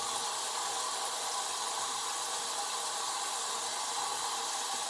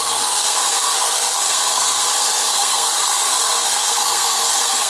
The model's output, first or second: second